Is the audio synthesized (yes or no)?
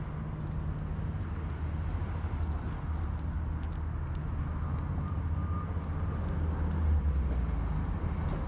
no